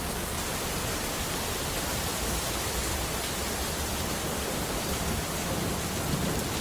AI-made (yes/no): yes